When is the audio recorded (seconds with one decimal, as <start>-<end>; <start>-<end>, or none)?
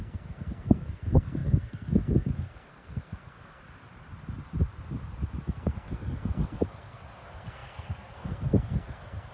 3.6-5.4